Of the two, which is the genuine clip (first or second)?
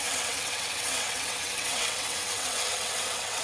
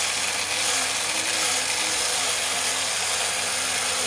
second